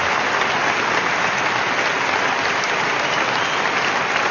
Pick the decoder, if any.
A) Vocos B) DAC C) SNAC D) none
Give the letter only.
D